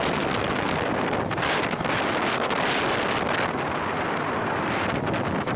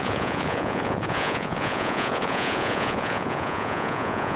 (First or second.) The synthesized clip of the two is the second